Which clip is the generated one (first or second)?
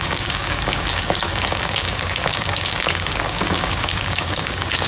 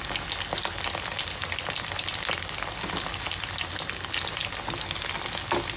first